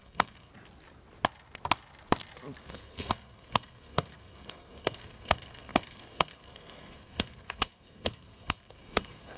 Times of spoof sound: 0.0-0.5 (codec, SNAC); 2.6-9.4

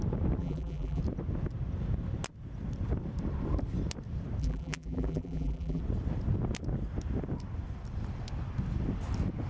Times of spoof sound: 0.4-1.0 (vocoder, BigVGAN v2); 4.4-5.8

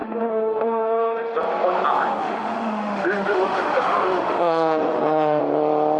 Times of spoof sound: 0.0-1.4 (autoencoder, DAC-VAE); 2.2-5.4

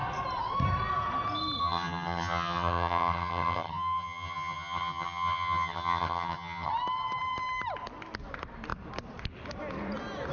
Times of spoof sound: 1.6-6.7 (vocoder, HiFi-GAN)

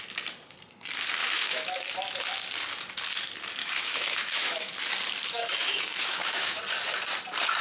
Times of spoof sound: 1.2-1.9 (autoencoder, DAC-VAE); 3.6-4.7; 5.6-6.6

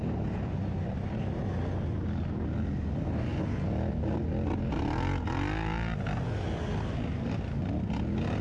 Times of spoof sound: none